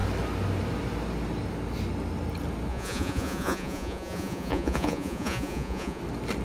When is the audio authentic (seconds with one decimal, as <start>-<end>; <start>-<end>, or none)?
0.0-2.7; 6.0-6.4